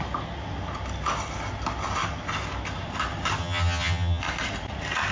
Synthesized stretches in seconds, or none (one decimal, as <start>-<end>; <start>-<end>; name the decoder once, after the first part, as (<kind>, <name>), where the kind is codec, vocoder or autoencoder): 3.4-4.2 (vocoder, HiFi-GAN)